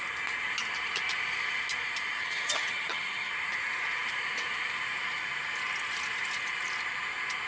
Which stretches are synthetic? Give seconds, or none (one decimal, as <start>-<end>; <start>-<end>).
2.2-3.3